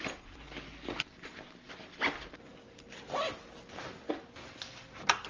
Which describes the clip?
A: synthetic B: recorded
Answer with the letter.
B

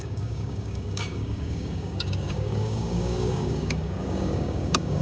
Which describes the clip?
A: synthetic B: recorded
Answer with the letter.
A